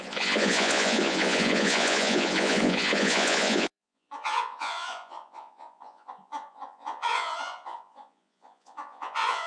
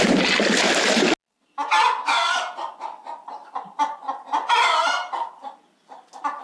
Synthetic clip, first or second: first